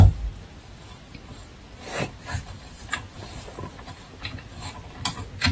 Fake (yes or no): no